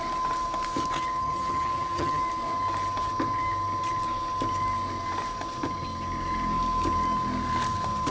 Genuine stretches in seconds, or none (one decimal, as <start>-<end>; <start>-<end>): 0.0-1.2; 2.2-8.1